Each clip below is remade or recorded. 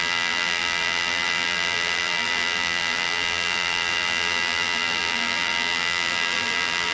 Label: remade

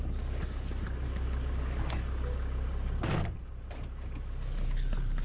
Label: recorded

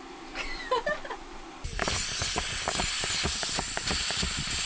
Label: remade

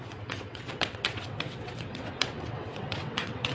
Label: remade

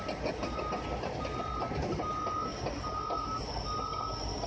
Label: recorded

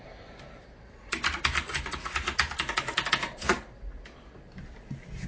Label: recorded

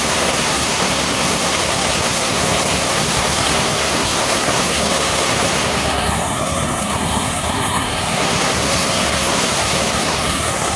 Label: remade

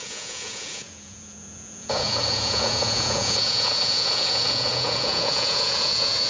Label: remade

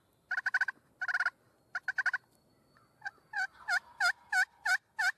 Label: recorded